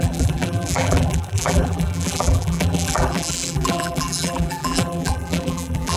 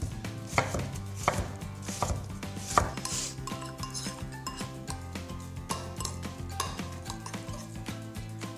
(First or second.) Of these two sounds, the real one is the second